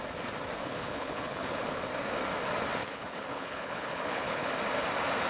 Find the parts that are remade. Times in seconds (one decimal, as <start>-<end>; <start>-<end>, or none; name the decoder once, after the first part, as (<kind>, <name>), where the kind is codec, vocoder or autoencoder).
0.6-1.8 (codec, HILCodec); 2.8-4.5